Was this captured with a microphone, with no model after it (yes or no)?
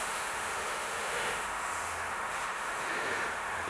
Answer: no